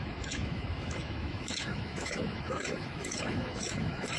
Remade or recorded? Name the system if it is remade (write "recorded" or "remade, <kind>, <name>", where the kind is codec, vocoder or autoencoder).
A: remade, autoencoder, DAC-VAE